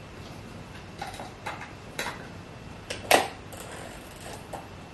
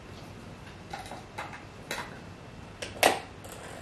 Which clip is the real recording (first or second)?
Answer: second